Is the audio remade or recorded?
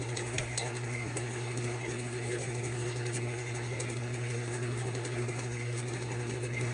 remade